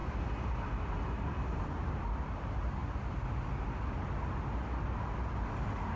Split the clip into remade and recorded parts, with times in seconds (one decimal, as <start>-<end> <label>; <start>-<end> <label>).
0.0-6.0 recorded